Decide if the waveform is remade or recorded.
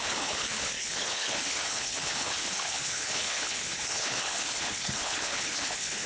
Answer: remade